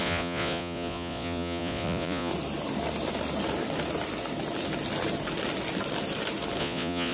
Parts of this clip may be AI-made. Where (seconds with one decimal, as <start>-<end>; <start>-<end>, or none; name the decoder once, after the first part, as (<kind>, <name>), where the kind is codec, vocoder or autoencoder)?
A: 0.0-2.3 (vocoder, Vocos); 6.6-7.1